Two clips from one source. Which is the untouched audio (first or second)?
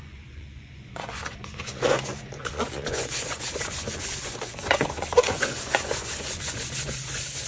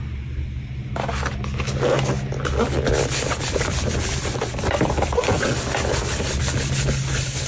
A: second